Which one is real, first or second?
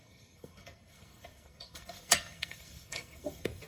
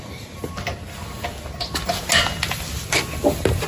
second